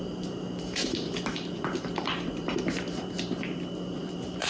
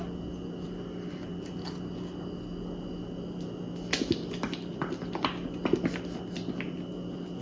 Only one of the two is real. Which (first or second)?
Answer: second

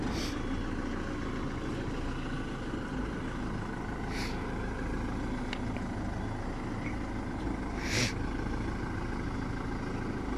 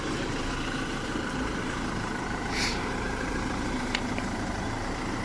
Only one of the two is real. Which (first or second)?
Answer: first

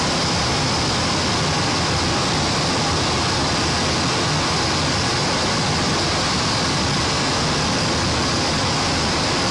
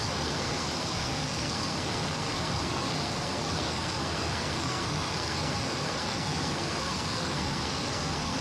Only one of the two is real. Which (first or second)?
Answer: first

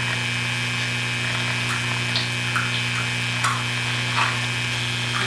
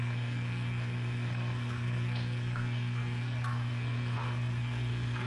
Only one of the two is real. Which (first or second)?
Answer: first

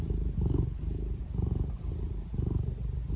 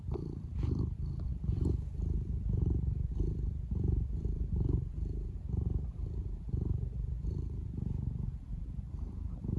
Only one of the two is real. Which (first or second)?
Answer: first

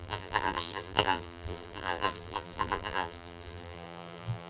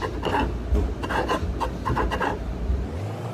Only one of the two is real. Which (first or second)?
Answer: second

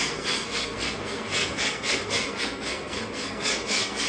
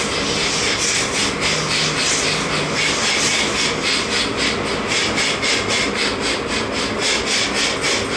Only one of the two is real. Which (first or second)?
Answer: second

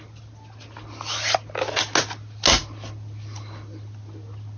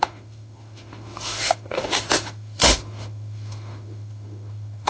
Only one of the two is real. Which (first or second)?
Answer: first